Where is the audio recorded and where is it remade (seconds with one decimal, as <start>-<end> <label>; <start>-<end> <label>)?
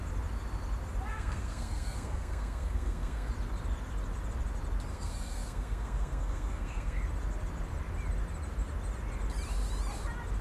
0.0-1.1 recorded; 1.1-3.3 remade; 3.3-4.9 recorded; 4.9-7.0 remade; 7.0-10.4 recorded